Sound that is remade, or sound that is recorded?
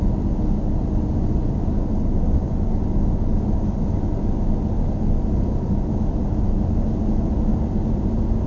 recorded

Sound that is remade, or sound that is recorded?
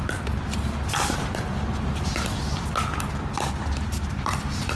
recorded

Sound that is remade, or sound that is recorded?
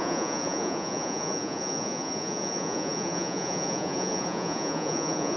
remade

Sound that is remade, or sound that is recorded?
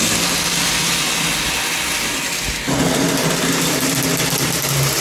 recorded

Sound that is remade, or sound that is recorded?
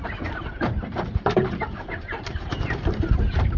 remade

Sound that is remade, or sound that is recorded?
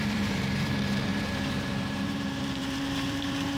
remade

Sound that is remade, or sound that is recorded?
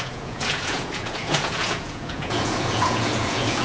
remade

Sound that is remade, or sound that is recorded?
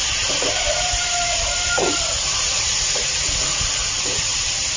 remade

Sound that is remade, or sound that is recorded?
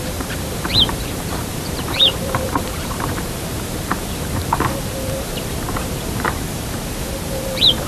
remade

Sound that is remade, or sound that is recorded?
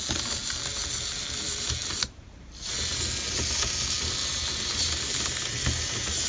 recorded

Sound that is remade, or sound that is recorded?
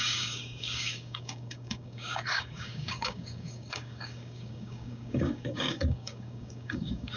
remade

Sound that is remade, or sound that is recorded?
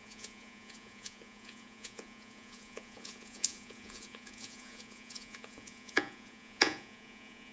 remade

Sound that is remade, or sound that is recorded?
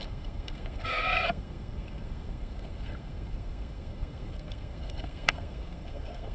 remade